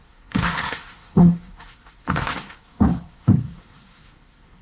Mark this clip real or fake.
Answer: fake